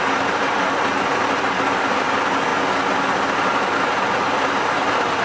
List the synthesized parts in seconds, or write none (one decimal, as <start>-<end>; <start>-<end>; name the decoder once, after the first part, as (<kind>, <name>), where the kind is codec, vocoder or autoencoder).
none